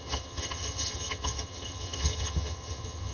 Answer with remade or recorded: remade